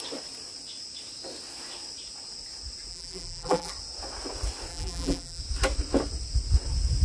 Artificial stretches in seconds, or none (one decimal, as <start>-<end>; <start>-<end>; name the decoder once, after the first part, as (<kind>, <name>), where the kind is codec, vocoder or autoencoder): 2.9-3.7 (vocoder, BigVGAN v2); 4.7-5.4